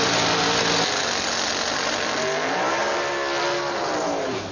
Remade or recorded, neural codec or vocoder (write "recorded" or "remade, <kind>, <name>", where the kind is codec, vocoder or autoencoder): recorded